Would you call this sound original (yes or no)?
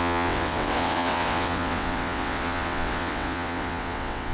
no